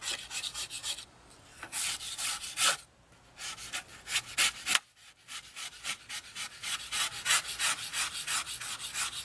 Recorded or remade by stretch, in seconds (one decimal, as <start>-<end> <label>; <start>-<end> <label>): 0.0-1.5 recorded; 1.5-2.8 remade; 2.8-9.2 recorded